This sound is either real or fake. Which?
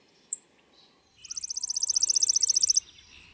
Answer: real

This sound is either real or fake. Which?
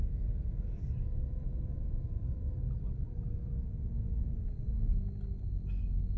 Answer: real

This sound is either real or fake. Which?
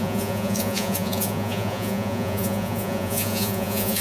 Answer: fake